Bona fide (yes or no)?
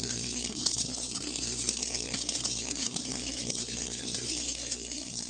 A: no